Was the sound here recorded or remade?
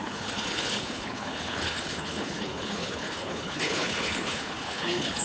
remade